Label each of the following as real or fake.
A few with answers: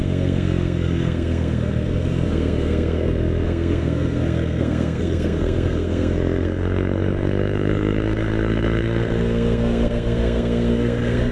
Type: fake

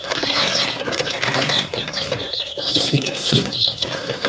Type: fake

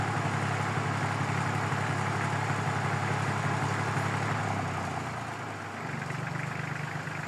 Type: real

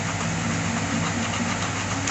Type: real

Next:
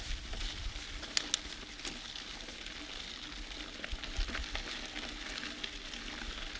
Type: real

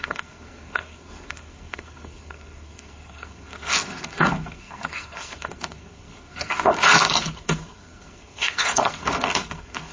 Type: fake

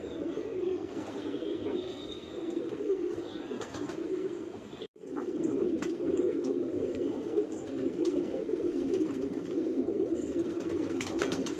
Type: fake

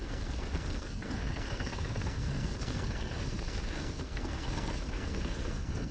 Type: fake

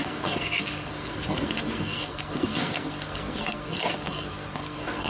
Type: fake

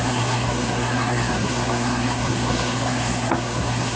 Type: fake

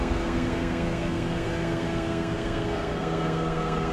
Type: fake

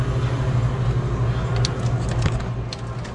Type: real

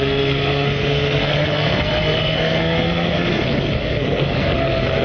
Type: fake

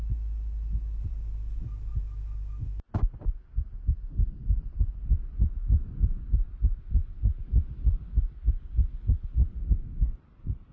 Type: real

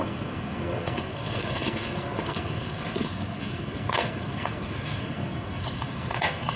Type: fake